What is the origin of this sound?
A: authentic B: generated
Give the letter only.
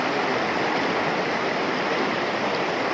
A